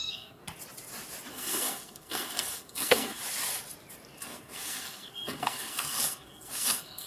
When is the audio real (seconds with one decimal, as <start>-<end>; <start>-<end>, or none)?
0.4-1.3; 3.2-4.2